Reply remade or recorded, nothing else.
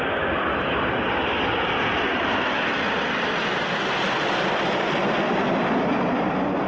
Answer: recorded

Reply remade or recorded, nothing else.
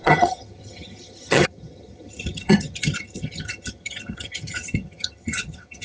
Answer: remade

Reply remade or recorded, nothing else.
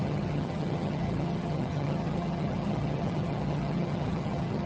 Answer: remade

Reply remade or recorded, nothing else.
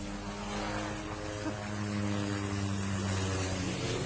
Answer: recorded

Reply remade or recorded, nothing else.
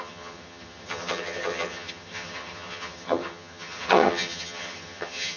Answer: remade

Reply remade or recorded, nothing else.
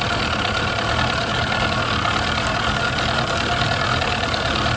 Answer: recorded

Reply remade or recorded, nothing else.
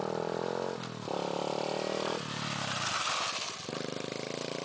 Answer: recorded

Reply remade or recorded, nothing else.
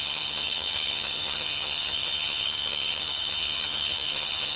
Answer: remade